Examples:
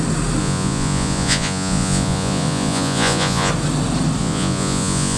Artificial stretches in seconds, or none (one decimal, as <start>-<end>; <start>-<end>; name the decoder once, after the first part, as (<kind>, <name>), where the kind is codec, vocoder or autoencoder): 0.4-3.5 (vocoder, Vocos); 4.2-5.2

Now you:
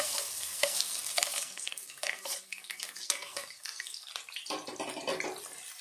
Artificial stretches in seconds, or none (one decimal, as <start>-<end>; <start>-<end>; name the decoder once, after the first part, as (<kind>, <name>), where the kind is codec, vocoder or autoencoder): 0.0-4.1 (codec, SNAC)

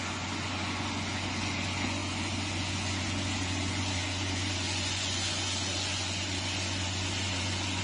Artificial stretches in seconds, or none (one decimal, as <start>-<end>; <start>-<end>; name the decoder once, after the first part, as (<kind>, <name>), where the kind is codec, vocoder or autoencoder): 0.0-7.8 (vocoder, Vocos)